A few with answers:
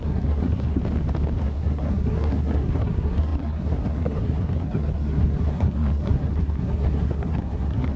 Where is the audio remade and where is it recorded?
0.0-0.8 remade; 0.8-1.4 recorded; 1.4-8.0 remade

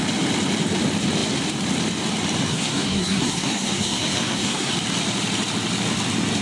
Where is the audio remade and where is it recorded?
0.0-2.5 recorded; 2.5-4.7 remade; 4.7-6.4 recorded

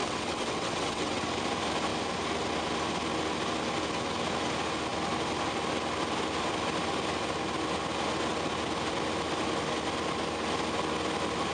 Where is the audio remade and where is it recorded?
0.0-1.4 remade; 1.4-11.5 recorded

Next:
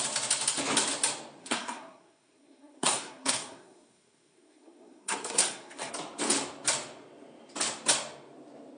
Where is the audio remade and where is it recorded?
0.0-1.4 recorded; 1.4-5.9 remade; 5.9-8.8 recorded

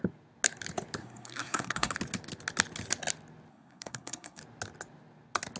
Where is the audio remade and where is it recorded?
0.0-1.0 recorded; 1.0-1.9 remade; 1.9-3.5 recorded; 3.5-4.4 remade; 4.4-5.6 recorded

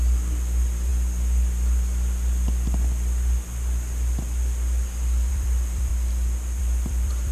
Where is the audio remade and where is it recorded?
0.0-0.9 remade; 0.9-5.3 recorded; 5.3-5.9 remade; 5.9-6.6 recorded; 6.6-7.3 remade